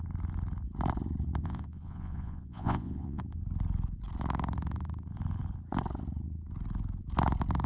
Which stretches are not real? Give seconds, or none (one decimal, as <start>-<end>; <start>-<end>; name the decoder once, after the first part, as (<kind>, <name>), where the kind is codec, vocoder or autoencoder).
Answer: 1.4-3.2 (vocoder, Vocos)